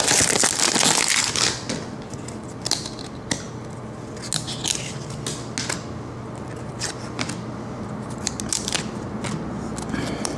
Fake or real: real